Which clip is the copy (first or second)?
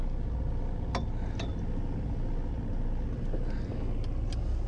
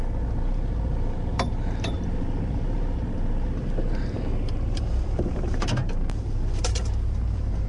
second